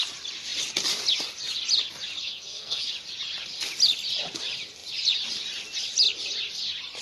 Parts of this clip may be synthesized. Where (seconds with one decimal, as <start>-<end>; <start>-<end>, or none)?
2.2-2.9